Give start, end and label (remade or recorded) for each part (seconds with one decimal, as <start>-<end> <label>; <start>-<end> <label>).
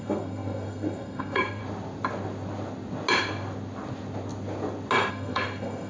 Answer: 0.0-1.6 remade; 1.6-5.1 recorded; 5.1-5.9 remade